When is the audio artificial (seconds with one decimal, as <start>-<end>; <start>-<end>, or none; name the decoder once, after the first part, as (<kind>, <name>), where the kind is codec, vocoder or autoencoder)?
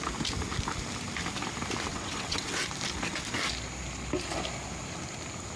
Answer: 1.9-2.7 (vocoder, WaveNeXt)